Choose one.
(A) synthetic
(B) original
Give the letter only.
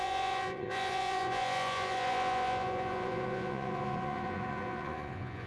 A